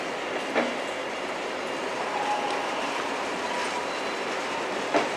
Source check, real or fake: real